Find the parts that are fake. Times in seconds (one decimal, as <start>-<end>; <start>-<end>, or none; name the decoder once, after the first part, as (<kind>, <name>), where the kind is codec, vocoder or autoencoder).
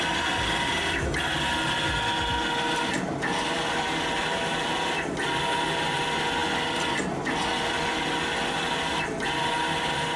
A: none